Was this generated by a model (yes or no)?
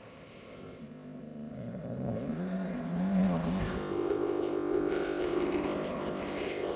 yes